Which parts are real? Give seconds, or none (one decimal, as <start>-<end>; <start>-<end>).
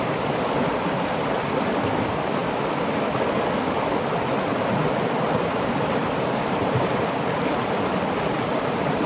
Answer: 0.0-9.1